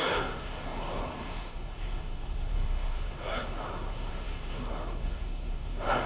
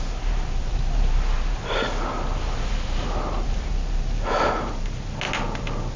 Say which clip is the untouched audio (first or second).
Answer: second